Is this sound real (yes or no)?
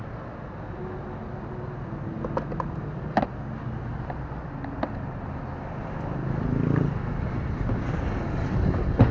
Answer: yes